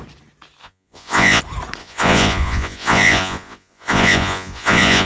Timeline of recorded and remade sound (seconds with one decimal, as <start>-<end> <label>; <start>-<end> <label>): 0.0-0.6 recorded; 0.6-1.4 remade; 1.4-1.8 recorded; 1.8-5.1 remade